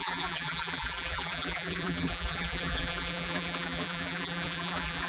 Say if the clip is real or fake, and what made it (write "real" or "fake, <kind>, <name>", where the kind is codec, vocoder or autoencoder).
fake, vocoder, BigVGAN v2